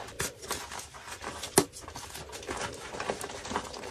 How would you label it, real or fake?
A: real